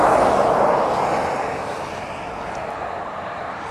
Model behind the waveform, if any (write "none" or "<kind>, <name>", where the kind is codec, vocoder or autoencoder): none